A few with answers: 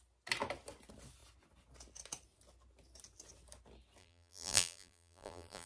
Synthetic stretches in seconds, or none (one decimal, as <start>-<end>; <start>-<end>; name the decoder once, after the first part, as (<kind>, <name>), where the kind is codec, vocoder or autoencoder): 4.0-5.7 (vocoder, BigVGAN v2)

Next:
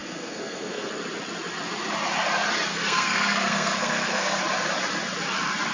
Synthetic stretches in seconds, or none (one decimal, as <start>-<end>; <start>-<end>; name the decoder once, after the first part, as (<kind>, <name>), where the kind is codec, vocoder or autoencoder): 0.0-0.9 (codec, SNAC); 2.7-4.4

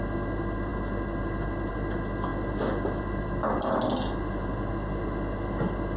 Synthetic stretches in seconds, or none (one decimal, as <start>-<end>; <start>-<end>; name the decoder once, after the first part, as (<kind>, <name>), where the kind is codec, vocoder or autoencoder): none

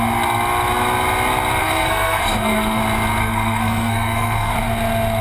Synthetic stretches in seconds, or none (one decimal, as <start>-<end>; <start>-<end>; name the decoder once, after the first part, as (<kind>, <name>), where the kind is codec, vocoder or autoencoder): 1.6-2.8 (codec, SNAC); 3.2-4.5